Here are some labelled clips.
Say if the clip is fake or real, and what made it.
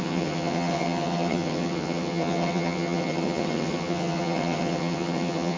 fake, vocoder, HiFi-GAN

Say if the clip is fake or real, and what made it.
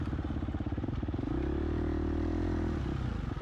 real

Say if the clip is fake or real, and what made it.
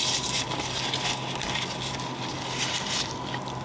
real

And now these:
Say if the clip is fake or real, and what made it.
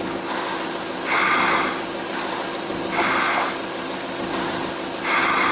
real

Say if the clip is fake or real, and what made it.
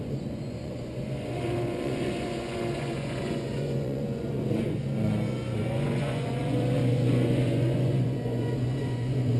fake, vocoder, Vocos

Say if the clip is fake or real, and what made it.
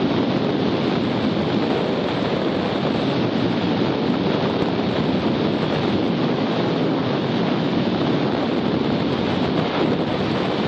real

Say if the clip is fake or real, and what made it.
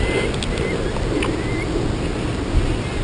real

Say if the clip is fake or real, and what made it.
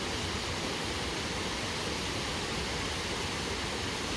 real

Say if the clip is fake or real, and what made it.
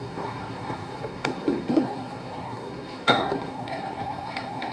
fake, codec, SNAC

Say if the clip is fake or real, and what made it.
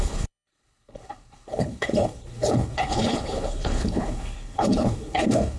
fake, codec, HILCodec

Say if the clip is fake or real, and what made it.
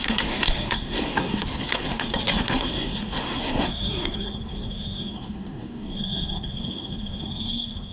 fake, codec, SNAC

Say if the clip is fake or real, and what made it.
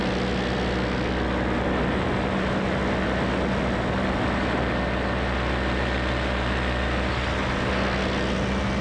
real